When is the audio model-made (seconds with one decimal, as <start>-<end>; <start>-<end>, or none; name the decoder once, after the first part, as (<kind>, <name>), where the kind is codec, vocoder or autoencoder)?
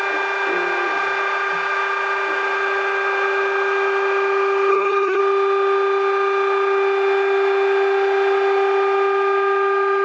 4.7-5.2 (codec, SNAC)